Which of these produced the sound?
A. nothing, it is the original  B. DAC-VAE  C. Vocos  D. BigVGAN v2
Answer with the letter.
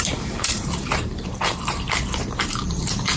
D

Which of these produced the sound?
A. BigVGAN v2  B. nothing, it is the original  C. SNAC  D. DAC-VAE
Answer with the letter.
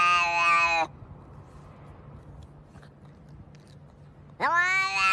B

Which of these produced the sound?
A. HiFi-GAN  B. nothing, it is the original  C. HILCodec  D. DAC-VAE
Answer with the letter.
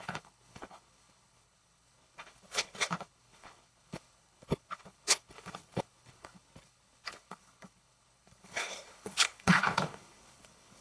C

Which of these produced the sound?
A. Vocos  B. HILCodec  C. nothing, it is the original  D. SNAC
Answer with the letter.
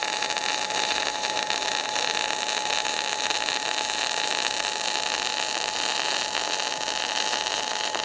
C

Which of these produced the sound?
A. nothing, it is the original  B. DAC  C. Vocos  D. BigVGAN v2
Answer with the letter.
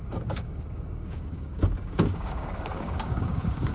B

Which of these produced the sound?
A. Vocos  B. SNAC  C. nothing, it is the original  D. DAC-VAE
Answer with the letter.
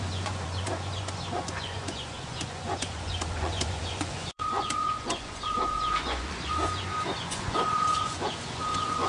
A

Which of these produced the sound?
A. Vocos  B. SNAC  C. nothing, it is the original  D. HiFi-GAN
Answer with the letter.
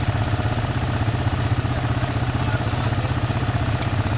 C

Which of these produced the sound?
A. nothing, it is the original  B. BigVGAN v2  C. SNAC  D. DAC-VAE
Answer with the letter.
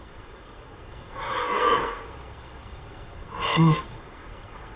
C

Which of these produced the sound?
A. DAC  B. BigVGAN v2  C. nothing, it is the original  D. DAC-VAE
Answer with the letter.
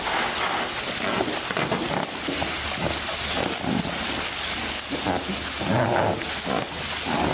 C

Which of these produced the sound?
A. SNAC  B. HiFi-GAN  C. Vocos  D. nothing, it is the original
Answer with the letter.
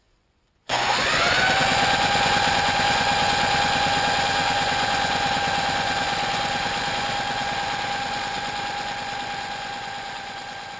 C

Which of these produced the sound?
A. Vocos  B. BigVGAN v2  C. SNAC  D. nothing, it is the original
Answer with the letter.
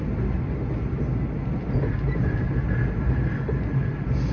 D